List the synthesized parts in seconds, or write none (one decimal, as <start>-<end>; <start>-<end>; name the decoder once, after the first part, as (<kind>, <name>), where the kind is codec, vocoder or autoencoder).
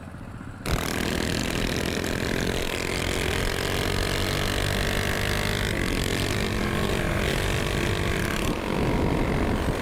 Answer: 1.4-3.3 (vocoder, BigVGAN v2); 6.1-7.0